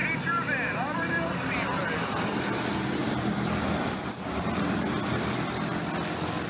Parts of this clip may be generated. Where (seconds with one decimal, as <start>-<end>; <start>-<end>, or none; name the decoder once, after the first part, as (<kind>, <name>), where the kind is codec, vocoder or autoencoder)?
none